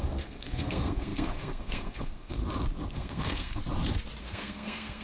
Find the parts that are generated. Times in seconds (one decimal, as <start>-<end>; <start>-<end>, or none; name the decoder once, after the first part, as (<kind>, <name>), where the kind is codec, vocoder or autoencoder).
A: 0.0-2.4 (codec, SNAC); 2.9-3.6; 4.2-5.0